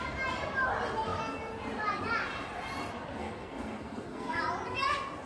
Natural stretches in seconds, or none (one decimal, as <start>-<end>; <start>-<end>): 0.0-3.2; 4.4-5.3